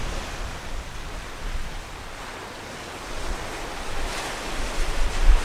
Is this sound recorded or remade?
recorded